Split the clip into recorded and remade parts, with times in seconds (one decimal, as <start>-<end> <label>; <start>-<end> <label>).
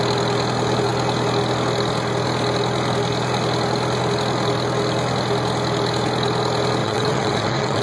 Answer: 0.0-6.8 recorded; 6.8-7.8 remade